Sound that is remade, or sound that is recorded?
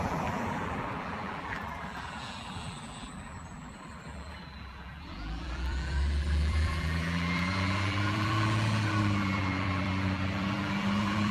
remade